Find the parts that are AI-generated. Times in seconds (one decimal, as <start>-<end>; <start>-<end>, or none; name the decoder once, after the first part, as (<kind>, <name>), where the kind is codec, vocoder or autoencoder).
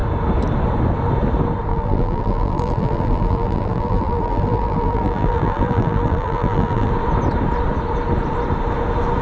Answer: 1.7-6.9 (vocoder, BigVGAN v2)